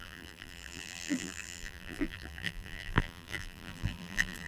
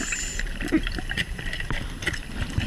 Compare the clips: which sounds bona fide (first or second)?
second